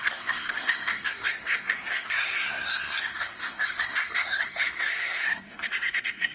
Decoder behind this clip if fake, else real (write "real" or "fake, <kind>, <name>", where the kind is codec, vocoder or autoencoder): fake, codec, SNAC